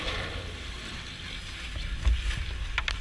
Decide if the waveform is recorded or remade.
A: recorded